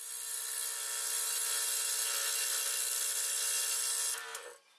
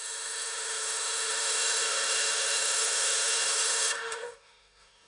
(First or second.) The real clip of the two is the first